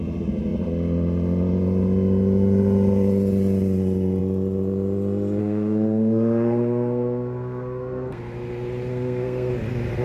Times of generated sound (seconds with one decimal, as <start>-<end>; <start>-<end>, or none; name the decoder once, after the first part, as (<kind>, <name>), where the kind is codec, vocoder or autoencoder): 5.4-8.2 (codec, SNAC); 8.9-9.5